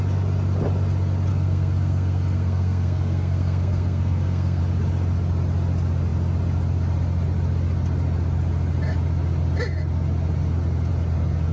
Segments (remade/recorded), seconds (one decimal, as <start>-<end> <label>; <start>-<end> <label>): 0.0-1.3 recorded; 1.3-4.6 remade; 4.6-11.5 recorded